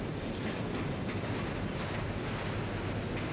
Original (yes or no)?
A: yes